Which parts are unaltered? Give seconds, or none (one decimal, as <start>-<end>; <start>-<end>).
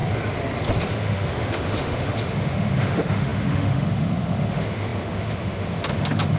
0.0-0.9